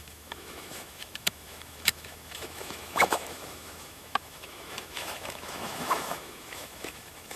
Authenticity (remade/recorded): remade